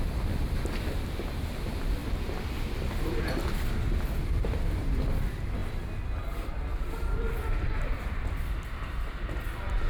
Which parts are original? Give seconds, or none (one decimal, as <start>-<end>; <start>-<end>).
2.0-4.2; 5.6-8.4